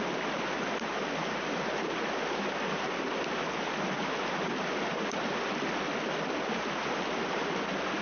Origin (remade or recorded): recorded